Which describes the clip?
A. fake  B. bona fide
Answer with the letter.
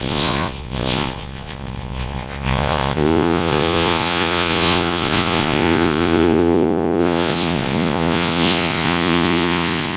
A